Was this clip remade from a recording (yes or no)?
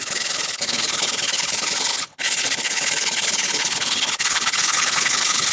yes